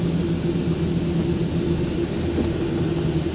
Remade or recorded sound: recorded